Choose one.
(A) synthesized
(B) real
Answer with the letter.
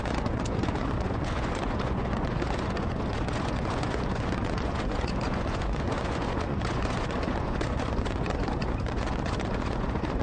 A